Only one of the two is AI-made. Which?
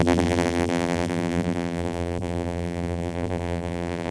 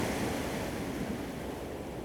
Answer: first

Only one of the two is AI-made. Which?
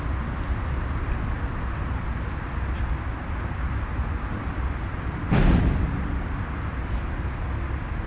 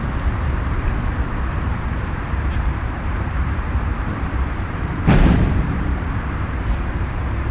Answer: second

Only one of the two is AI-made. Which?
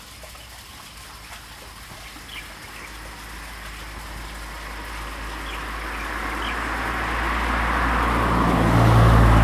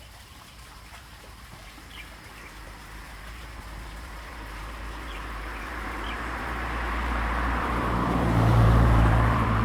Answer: second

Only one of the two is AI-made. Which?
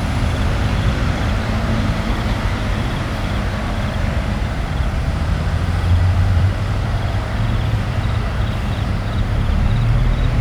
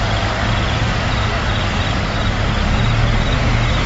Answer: first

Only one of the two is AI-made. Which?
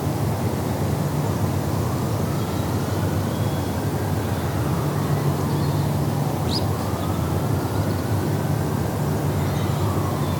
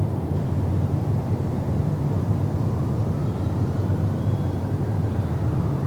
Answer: second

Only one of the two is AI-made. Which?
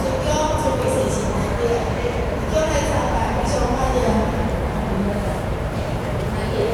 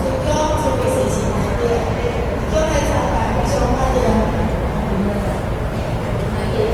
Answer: first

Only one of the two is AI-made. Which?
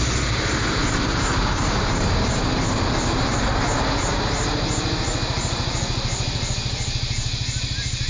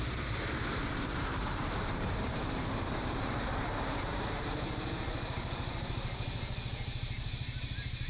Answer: second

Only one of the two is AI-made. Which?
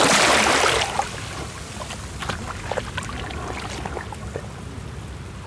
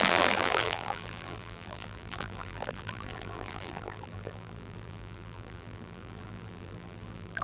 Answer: second